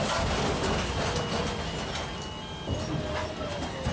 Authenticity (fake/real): real